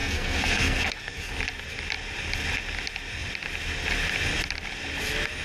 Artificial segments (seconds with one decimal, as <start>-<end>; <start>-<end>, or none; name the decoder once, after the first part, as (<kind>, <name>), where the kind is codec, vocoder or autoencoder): 0.0-1.3 (codec, SNAC)